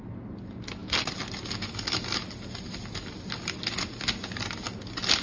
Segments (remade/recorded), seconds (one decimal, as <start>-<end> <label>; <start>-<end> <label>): 0.0-5.2 recorded